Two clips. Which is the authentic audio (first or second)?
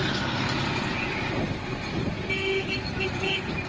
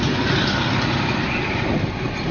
first